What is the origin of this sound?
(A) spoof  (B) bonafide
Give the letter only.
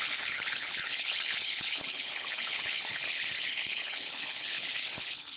A